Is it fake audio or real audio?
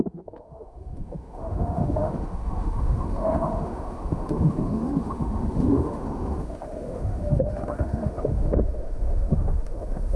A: fake